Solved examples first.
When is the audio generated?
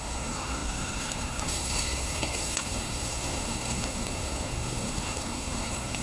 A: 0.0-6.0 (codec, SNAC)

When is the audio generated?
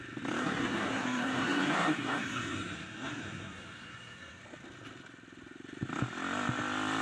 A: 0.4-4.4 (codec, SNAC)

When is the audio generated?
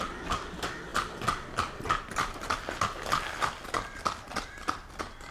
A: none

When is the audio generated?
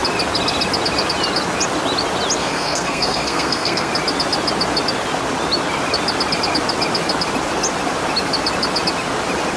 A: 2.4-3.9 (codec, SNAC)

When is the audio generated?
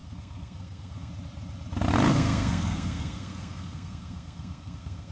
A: 0.0-1.1 (codec, SNAC); 2.1-5.1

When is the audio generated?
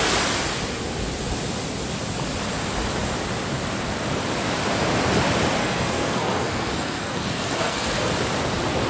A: 5.6-8.1 (codec, SNAC)